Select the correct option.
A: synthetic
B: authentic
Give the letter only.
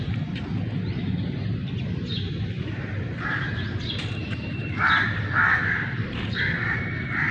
A